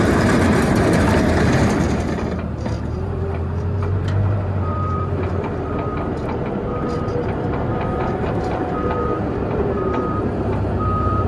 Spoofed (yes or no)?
yes